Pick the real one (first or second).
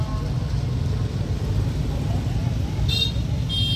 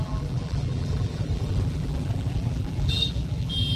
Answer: first